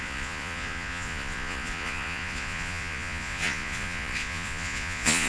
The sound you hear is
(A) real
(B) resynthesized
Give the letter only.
B